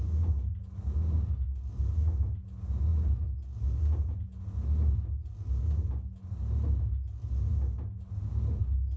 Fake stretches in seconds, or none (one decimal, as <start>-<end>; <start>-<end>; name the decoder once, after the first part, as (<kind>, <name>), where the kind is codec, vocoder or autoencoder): none